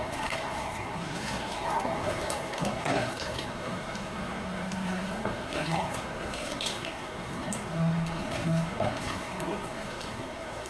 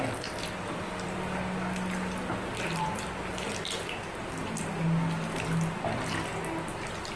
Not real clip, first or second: first